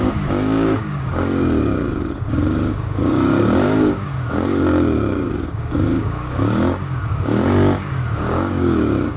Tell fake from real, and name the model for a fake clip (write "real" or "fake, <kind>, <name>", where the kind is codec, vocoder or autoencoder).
fake, codec, DAC